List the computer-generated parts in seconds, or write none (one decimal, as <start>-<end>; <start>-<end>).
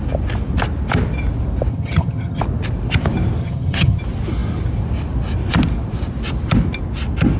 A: 1.7-2.4; 3.4-4.0